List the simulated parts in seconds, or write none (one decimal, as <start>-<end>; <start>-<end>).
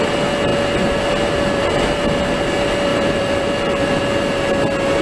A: 2.9-4.0